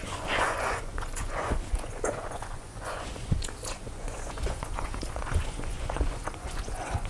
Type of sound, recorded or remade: remade